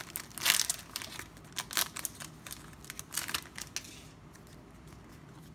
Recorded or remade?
recorded